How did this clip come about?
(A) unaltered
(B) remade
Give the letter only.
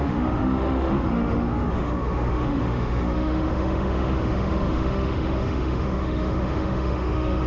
B